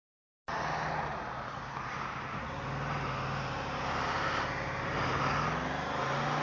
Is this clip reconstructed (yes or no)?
no